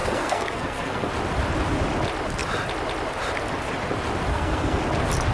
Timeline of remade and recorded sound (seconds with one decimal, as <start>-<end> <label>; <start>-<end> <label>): 0.0-1.1 remade; 1.1-4.3 recorded; 4.3-4.8 remade; 4.8-5.3 recorded